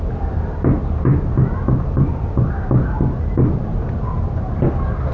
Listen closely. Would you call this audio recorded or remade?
remade